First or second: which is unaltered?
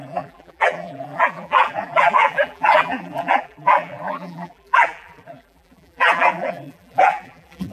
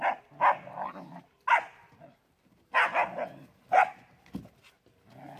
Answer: second